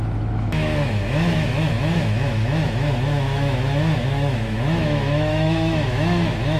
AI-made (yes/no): yes